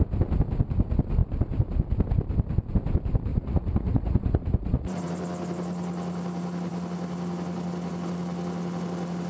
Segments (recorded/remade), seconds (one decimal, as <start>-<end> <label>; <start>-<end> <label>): 0.0-3.3 recorded; 3.3-5.1 remade; 5.1-9.3 recorded